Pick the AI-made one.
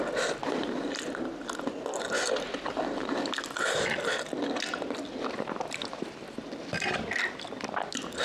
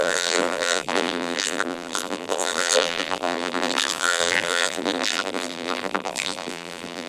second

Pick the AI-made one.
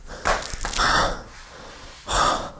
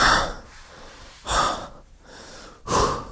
second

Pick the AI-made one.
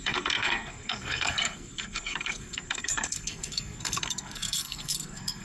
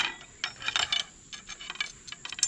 first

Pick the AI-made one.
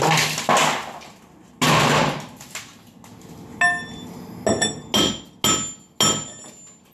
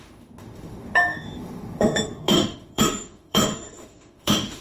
second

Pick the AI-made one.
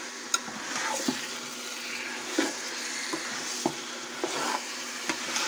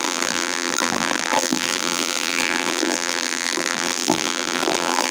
second